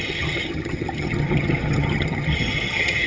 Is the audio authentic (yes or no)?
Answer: no